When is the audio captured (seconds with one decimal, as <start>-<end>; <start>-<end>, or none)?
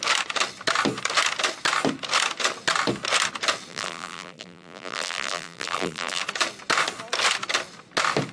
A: 0.0-3.7; 6.2-8.3